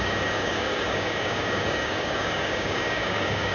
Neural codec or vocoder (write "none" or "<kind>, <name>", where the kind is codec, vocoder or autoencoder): codec, DAC